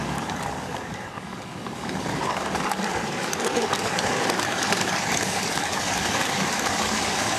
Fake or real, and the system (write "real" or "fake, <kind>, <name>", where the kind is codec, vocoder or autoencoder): fake, codec, DAC